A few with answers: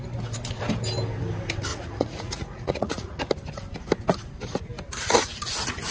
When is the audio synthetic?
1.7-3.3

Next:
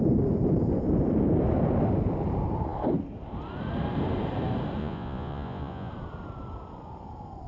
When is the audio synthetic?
4.8-5.9

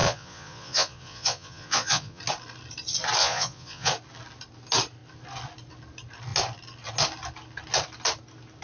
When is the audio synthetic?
0.0-2.2; 3.2-3.9